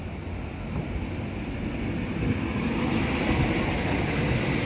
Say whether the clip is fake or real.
real